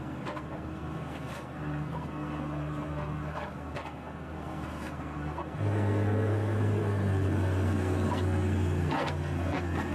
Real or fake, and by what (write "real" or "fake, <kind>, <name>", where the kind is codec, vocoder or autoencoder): fake, codec, SNAC